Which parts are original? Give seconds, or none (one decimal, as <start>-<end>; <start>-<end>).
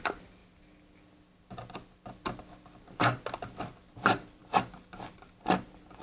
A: 0.0-6.0